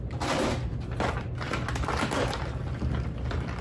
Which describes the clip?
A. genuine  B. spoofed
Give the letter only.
A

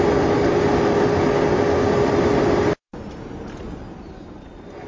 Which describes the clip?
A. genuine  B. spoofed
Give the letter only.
A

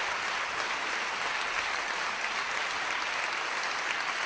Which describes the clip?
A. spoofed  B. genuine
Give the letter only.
B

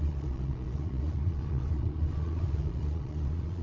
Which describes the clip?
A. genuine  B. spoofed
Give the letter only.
B